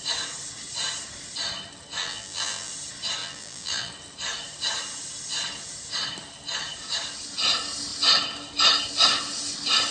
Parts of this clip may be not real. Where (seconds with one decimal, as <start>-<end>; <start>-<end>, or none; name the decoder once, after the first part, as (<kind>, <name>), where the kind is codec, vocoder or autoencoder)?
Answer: 2.0-2.7 (vocoder, BigVGAN v2); 3.2-3.9